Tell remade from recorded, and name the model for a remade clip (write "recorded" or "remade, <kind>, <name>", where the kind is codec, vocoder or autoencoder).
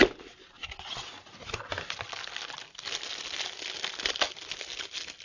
recorded